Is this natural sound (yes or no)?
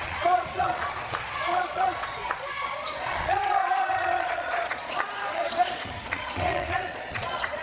no